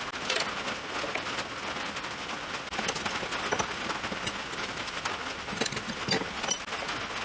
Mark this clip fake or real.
real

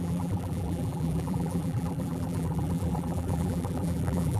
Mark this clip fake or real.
fake